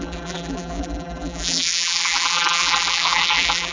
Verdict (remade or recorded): remade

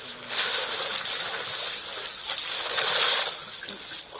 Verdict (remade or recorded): recorded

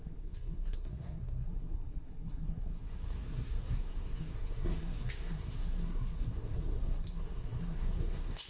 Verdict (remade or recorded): remade